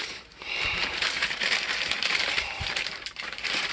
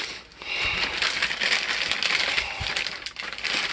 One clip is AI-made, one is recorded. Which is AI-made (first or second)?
first